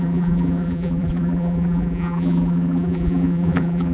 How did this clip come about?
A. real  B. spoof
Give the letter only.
B